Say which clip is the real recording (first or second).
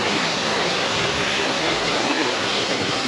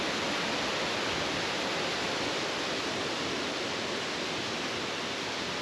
second